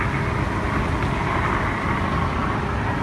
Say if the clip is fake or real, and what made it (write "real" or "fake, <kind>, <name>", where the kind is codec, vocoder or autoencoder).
real